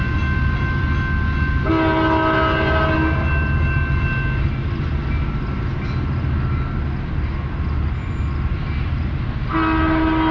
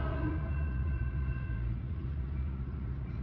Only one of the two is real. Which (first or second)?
first